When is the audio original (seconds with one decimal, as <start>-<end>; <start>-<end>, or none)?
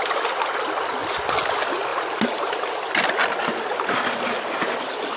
0.0-5.2